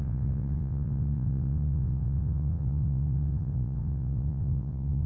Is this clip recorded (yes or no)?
no